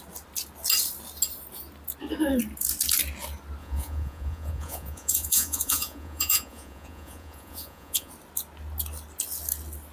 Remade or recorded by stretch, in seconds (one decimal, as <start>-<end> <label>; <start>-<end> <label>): 0.0-3.6 recorded; 3.6-8.1 remade; 8.1-9.9 recorded

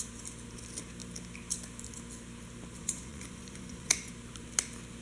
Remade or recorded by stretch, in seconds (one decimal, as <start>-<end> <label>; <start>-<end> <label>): 0.0-2.8 recorded; 2.8-4.1 remade; 4.1-5.0 recorded

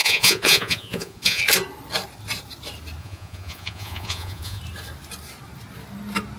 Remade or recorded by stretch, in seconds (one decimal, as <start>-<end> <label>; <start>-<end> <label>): 0.0-1.4 remade; 1.4-3.0 recorded; 3.0-4.6 remade; 4.6-6.4 recorded

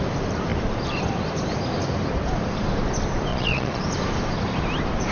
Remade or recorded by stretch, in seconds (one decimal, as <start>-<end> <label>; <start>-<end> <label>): 0.0-3.3 recorded; 3.3-3.8 remade; 3.8-5.1 recorded

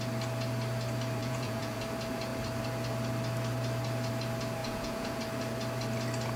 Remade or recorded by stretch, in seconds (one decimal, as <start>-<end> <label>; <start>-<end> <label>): 0.0-1.2 recorded; 1.2-1.8 remade; 1.8-4.6 recorded; 4.6-5.2 remade; 5.2-6.4 recorded

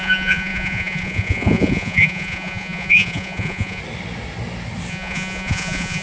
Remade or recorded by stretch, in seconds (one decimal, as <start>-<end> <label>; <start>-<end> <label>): 0.0-3.8 remade; 3.8-4.9 recorded; 4.9-6.0 remade

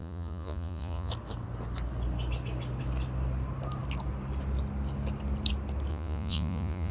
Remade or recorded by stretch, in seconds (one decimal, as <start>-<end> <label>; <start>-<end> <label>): 0.0-1.1 remade; 1.1-5.9 recorded; 5.9-6.9 remade